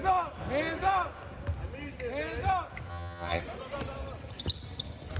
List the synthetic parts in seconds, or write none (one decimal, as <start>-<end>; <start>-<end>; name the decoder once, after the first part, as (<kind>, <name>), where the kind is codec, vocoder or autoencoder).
2.9-3.4 (vocoder, HiFi-GAN)